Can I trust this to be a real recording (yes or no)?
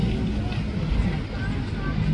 yes